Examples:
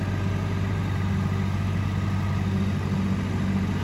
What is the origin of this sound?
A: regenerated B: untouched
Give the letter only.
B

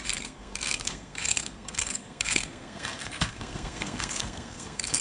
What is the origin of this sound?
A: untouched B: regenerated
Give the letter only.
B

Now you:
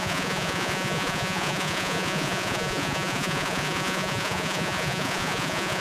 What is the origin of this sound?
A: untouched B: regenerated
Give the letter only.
B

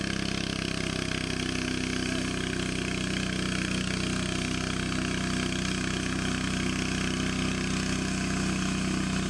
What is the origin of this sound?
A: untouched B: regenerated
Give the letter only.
A